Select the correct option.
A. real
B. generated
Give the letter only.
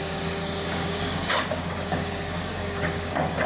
B